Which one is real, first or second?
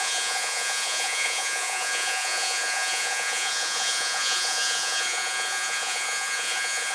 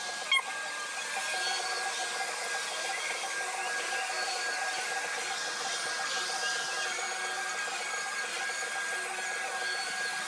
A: second